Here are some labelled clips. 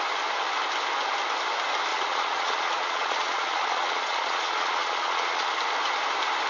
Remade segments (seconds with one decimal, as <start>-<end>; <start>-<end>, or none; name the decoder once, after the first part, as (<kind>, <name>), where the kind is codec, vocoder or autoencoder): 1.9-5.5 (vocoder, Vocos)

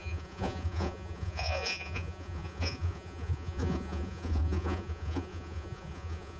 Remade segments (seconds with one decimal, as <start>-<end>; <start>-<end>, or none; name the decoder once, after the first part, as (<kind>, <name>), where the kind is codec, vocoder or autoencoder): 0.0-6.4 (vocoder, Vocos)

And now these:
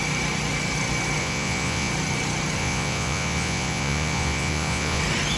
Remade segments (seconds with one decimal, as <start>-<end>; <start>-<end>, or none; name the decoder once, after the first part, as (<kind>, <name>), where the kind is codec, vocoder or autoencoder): 1.2-1.9 (vocoder, Vocos); 2.6-5.0

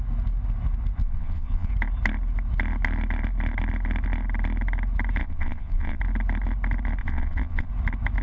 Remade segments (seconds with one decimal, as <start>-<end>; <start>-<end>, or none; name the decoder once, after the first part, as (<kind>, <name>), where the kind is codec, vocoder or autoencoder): 1.0-1.7 (vocoder, Vocos); 5.2-6.0; 7.0-7.7